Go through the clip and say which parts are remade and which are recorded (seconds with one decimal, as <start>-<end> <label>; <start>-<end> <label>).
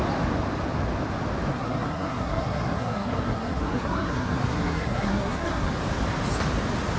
0.0-1.5 recorded; 1.5-5.7 remade; 5.7-7.0 recorded